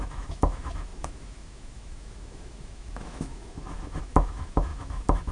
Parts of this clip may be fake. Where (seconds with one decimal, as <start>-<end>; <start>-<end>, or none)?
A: 0.0-5.3